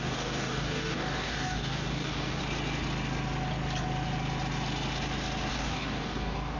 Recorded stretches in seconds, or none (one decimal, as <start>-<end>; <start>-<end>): 2.4-5.5